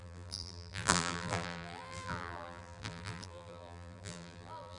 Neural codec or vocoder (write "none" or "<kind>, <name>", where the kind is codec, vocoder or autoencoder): vocoder, BigVGAN v2